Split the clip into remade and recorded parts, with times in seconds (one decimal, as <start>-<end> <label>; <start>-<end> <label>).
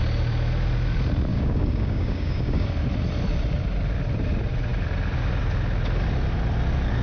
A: 0.0-1.3 recorded; 1.3-2.7 remade; 2.7-7.0 recorded